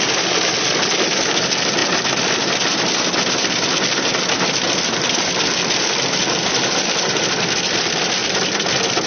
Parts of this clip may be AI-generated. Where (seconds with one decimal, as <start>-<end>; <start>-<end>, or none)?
none